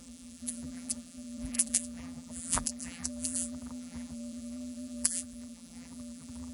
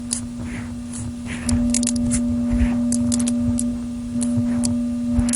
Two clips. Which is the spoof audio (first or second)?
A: first